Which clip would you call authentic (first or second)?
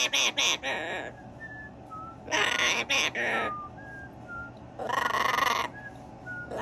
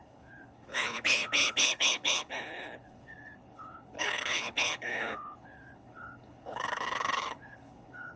first